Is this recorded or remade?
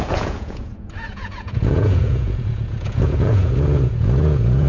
remade